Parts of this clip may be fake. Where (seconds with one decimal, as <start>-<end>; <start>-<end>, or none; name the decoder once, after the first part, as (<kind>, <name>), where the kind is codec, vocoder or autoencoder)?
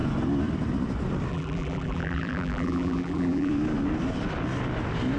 1.3-3.5 (vocoder, BigVGAN v2)